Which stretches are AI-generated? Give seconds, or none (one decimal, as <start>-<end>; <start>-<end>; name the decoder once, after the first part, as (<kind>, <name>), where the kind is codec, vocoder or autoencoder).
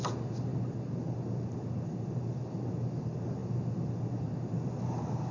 none